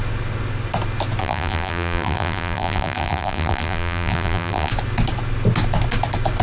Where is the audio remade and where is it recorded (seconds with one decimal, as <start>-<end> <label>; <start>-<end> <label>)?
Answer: 0.0-1.2 recorded; 1.2-4.7 remade; 4.7-6.4 recorded